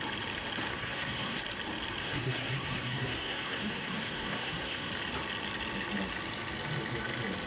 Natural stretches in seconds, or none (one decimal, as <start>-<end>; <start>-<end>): 0.0-0.7; 1.4-2.0; 4.9-7.5